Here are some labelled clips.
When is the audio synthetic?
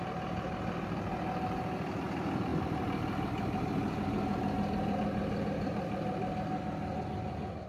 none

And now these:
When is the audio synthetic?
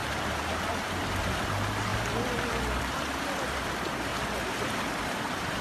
0.0-4.1 (vocoder, BigVGAN v2); 4.9-5.6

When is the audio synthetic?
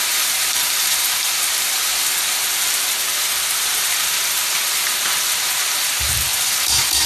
0.0-1.9 (vocoder, BigVGAN v2); 2.9-7.1